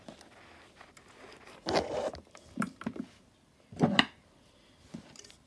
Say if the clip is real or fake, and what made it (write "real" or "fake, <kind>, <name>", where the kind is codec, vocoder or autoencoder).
real